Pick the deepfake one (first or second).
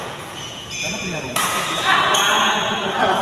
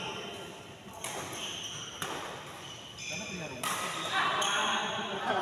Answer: first